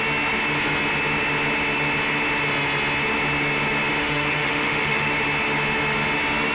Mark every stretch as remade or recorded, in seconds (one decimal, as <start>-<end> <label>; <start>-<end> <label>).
0.0-4.0 recorded; 4.0-5.1 remade; 5.1-6.5 recorded